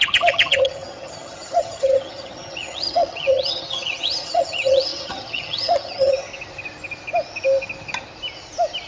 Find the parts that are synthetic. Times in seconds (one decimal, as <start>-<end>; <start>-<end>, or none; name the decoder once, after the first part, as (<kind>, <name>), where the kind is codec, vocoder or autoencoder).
0.0-6.3 (vocoder, HiFi-GAN)